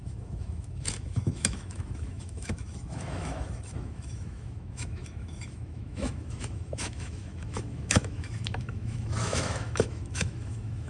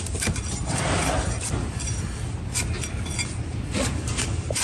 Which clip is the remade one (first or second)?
first